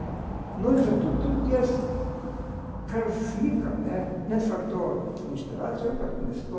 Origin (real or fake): real